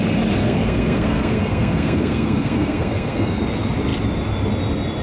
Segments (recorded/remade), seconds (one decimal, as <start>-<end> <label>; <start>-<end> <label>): 0.0-0.4 recorded; 0.4-3.4 remade; 3.4-5.0 recorded